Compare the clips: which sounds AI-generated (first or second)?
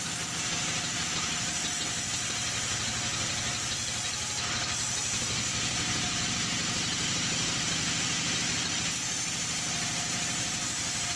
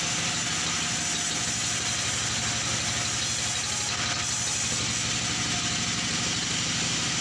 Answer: first